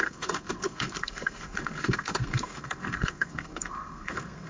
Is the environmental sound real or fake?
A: fake